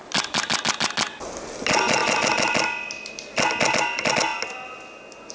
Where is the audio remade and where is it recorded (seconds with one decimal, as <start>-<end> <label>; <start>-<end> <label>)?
0.0-5.3 recorded